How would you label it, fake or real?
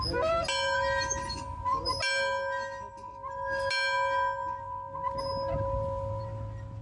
real